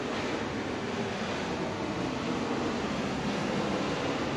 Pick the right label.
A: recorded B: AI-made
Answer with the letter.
A